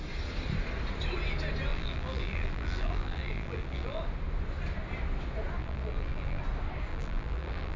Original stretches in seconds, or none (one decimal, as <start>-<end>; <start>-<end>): 0.0-1.7; 4.0-5.6; 6.4-6.9